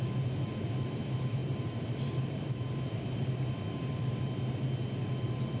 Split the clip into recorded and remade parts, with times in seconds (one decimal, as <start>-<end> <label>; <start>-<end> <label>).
0.0-1.4 recorded; 1.4-4.4 remade; 4.4-5.6 recorded